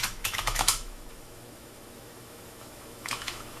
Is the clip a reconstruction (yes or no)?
yes